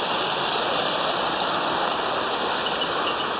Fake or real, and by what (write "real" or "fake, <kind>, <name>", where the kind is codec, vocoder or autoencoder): real